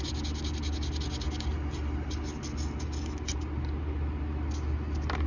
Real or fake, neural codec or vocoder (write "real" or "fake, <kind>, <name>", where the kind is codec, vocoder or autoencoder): real